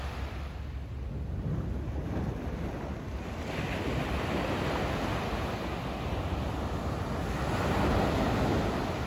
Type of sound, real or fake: real